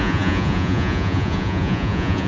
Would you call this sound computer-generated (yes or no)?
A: yes